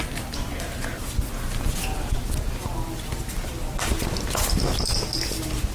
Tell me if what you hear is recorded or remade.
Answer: recorded